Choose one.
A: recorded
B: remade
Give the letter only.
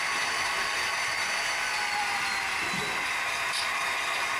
B